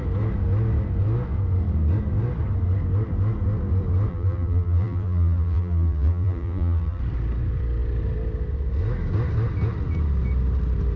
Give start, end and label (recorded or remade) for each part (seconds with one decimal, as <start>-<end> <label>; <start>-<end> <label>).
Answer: 0.0-4.1 recorded; 4.1-7.0 remade; 7.0-11.0 recorded